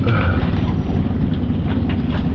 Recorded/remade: recorded